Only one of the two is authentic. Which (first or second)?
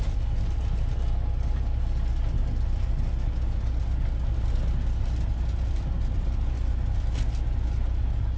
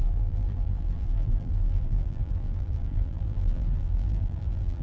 first